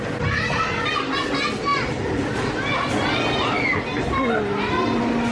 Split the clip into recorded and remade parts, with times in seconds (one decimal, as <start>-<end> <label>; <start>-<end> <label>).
0.0-5.3 recorded